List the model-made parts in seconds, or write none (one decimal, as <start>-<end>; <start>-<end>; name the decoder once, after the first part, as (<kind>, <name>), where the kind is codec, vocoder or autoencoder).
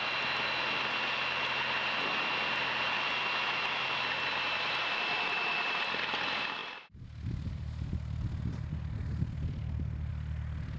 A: none